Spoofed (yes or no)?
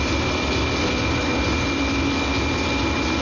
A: no